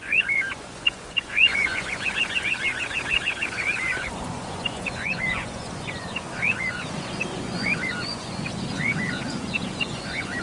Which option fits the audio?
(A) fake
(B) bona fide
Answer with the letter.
A